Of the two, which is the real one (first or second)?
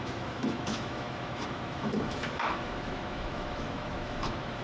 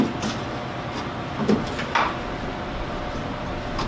second